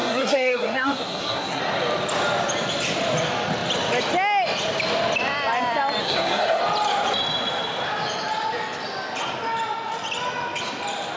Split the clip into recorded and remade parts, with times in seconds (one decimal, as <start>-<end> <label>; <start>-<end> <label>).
0.0-1.6 remade; 1.6-6.0 recorded; 6.0-6.6 remade; 6.6-11.2 recorded